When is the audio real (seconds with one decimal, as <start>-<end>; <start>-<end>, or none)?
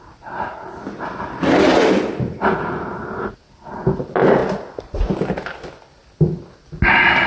0.0-7.3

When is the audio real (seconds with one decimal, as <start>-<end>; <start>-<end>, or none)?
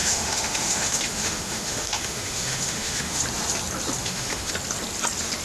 3.2-4.0; 4.5-5.4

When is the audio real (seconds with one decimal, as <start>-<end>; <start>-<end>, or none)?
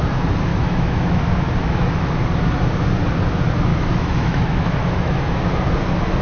0.0-0.5; 1.2-1.6; 2.1-3.7; 5.4-6.2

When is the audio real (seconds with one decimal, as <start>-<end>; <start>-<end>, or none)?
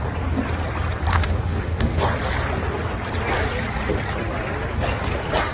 0.0-1.1; 2.0-5.5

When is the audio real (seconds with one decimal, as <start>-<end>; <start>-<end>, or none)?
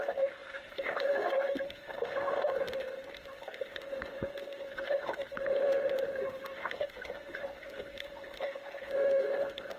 none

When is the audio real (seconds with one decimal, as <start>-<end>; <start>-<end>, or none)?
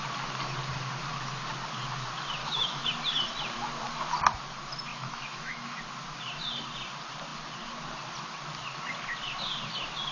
0.0-2.4; 2.9-4.9; 5.8-10.1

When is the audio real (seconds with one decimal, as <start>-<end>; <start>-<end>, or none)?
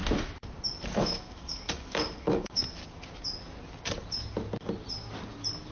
0.0-1.0; 2.8-5.7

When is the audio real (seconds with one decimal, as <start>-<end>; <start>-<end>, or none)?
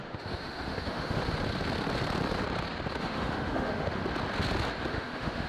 1.2-3.0; 4.0-4.9